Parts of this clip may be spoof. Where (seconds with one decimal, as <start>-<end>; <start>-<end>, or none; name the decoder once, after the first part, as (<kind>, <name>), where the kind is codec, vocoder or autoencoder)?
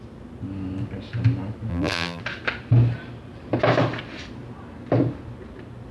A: 1.7-2.2 (vocoder, BigVGAN v2)